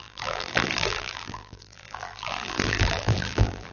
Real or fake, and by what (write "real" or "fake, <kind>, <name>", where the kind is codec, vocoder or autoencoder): fake, vocoder, BigVGAN v2